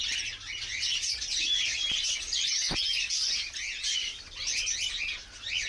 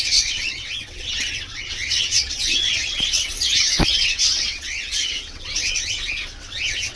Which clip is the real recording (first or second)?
first